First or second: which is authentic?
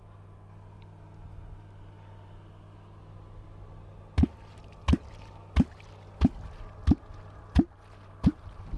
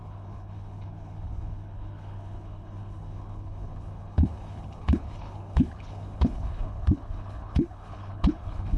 first